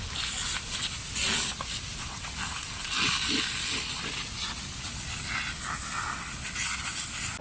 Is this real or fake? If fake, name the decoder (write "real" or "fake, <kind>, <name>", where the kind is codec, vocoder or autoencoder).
real